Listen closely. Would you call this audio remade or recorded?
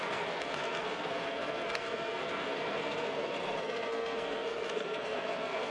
remade